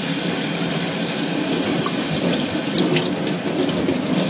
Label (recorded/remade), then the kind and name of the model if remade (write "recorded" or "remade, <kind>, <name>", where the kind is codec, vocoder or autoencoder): recorded